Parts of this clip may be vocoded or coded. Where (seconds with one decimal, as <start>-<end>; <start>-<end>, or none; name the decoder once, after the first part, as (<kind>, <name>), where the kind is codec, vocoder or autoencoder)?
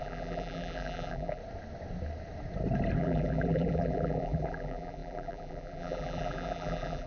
0.0-1.4 (vocoder, BigVGAN v2); 3.0-7.1